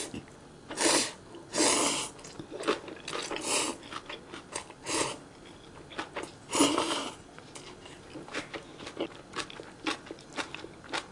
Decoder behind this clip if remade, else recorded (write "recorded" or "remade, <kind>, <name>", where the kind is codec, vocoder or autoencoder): recorded